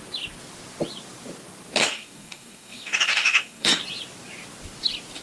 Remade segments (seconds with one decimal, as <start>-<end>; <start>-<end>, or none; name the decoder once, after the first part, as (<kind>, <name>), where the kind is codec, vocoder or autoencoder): 1.8-3.8 (codec, DAC)